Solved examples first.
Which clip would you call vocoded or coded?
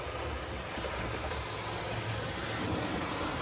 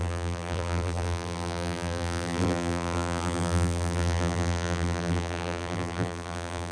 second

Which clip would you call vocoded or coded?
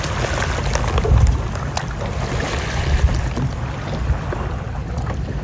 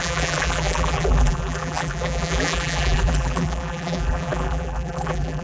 second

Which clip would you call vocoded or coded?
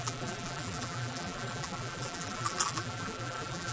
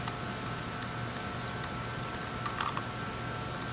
first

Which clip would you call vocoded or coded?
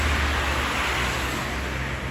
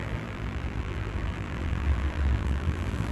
second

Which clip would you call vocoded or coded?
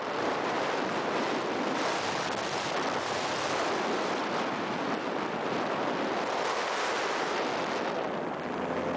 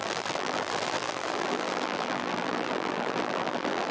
second